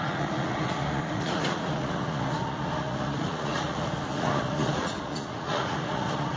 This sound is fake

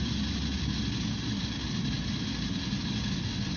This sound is real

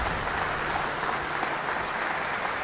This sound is real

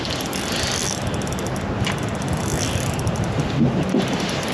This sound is real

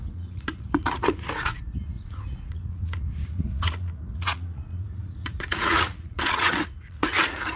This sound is fake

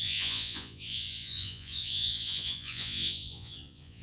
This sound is fake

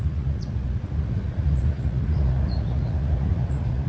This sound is fake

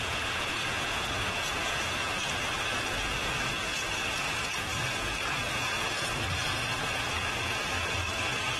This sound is fake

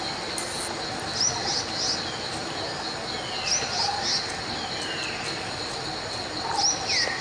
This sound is real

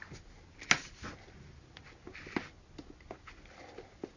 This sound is real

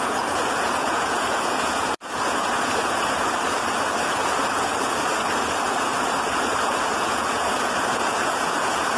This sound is fake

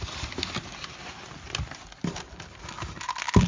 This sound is real